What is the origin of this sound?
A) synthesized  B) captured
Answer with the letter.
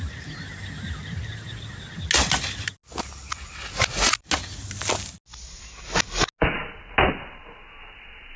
B